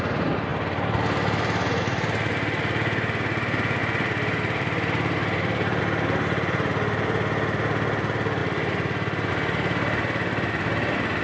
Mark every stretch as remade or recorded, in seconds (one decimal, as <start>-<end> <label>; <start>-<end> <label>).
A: 0.0-3.8 recorded; 3.8-5.8 remade; 5.8-8.4 recorded; 8.4-9.3 remade; 9.3-11.2 recorded